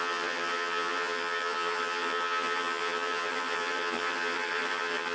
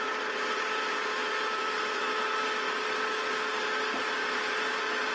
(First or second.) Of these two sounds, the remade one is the first